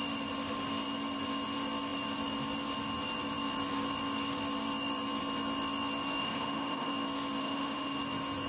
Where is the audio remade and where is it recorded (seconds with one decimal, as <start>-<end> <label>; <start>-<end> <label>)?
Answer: 0.0-6.2 recorded; 6.2-6.9 remade; 6.9-7.4 recorded; 7.4-8.0 remade; 8.0-8.5 recorded

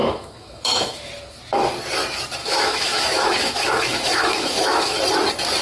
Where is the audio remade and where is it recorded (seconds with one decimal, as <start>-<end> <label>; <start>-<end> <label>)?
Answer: 0.0-1.1 remade; 1.1-2.4 recorded; 2.4-5.0 remade; 5.0-5.6 recorded

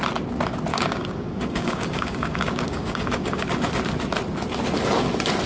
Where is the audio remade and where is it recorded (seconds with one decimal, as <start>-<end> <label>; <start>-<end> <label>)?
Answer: 0.0-0.7 recorded; 0.7-3.4 remade; 3.4-5.5 recorded

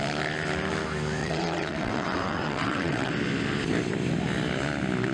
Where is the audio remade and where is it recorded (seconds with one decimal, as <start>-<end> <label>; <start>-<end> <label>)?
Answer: 0.0-1.2 recorded; 1.2-3.1 remade; 3.1-5.1 recorded

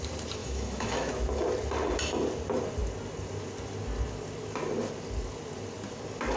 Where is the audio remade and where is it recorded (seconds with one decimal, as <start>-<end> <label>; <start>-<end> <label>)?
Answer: 0.0-0.4 recorded; 0.4-1.1 remade; 1.1-6.4 recorded